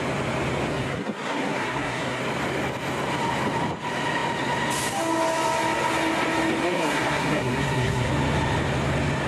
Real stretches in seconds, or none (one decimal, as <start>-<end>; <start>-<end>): 0.0-0.7; 2.2-6.6; 8.1-9.3